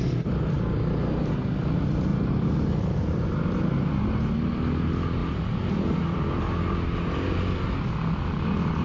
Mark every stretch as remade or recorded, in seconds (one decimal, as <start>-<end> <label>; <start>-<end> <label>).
0.0-2.1 recorded; 2.1-4.0 remade; 4.0-5.2 recorded; 5.2-6.4 remade; 6.4-8.8 recorded